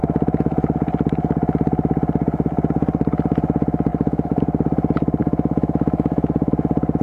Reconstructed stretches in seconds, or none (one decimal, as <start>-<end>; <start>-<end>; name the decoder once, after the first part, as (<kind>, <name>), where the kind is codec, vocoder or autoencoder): 3.9-4.4 (autoencoder, DAC-VAE); 5.2-6.5